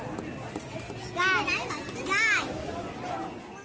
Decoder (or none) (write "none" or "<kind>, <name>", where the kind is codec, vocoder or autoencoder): none